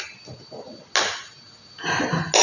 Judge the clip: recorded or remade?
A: recorded